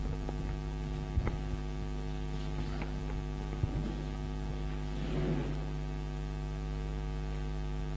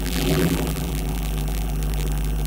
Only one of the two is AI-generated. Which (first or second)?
second